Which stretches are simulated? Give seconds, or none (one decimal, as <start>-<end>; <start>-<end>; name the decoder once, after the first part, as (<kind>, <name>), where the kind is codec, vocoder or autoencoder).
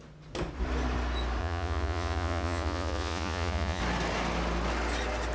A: 1.4-3.8 (vocoder, Vocos)